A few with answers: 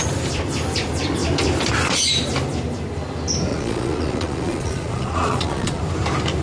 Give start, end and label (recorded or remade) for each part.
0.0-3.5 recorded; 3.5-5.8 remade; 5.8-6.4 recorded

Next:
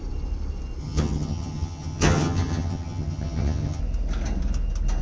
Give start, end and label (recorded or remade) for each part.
0.0-0.8 recorded; 0.8-3.8 remade; 3.8-5.0 recorded

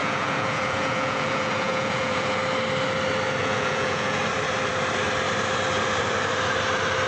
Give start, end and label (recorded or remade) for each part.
0.0-2.4 remade; 2.4-3.4 recorded; 3.4-4.2 remade; 4.2-7.1 recorded

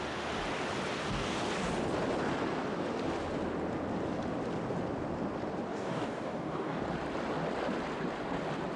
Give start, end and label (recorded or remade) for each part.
0.0-1.0 recorded; 1.0-1.5 remade; 1.5-5.7 recorded; 5.7-6.8 remade; 6.8-8.8 recorded